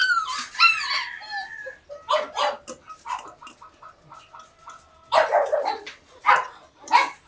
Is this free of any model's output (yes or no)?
yes